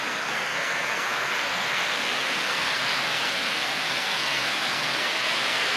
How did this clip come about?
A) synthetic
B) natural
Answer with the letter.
A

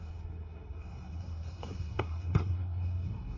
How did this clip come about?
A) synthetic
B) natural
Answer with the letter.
A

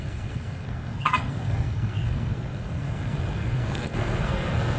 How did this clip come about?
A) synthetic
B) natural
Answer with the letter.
A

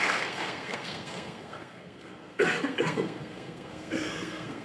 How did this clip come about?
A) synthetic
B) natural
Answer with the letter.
A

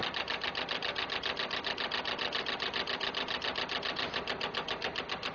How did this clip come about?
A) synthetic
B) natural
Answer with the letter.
B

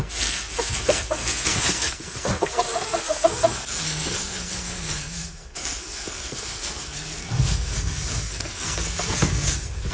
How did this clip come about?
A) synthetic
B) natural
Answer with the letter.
A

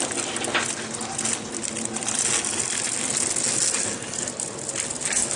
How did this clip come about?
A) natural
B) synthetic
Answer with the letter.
A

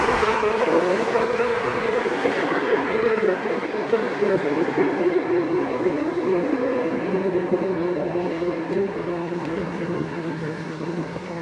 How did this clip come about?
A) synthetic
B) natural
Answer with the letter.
A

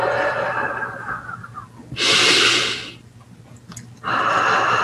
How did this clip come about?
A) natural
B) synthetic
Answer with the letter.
A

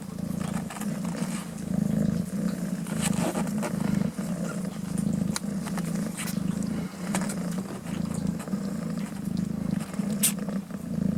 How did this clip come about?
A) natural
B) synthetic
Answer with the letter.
A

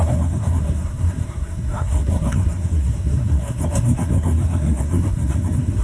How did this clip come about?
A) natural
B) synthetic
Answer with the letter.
B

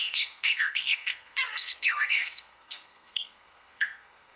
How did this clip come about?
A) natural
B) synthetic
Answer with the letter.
B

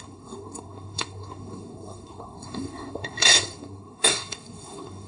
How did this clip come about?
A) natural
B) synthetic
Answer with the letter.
B